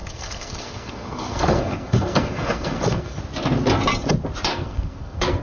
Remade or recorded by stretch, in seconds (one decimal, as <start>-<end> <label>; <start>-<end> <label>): 0.0-3.2 remade; 3.2-4.5 recorded; 4.5-5.4 remade